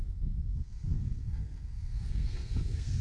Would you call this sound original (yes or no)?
no